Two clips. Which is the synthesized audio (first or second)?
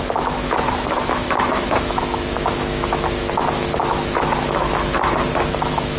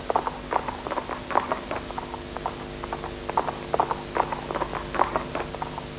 first